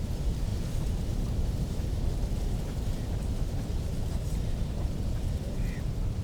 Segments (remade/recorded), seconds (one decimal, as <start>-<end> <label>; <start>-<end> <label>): 0.0-6.2 remade